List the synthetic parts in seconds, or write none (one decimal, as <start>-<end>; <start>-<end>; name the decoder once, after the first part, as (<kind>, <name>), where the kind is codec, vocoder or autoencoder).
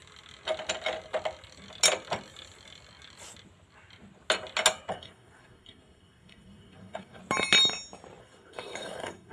4.9-7.2 (codec, SNAC); 8.2-9.3